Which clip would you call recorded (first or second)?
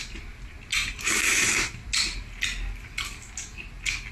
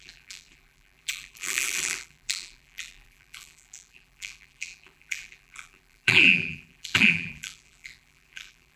first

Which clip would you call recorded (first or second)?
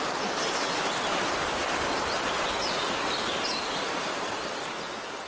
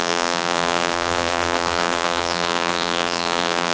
first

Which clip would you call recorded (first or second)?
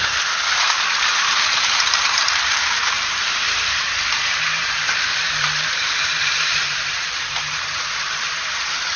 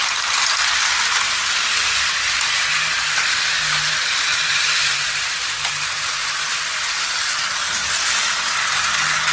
second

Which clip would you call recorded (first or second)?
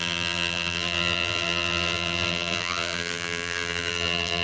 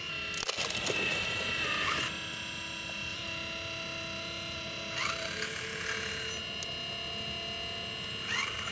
second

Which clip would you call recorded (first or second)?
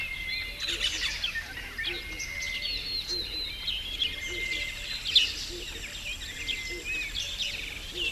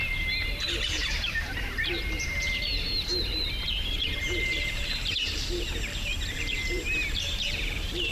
first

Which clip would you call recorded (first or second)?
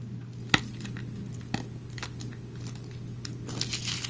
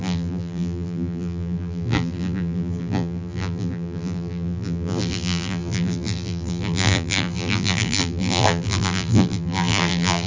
first